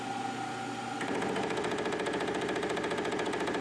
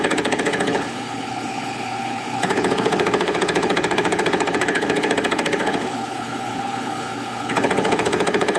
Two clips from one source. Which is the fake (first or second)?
second